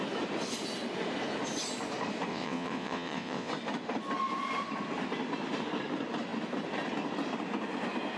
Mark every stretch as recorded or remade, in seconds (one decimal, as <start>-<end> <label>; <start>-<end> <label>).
0.0-2.3 recorded; 2.3-3.5 remade; 3.5-8.2 recorded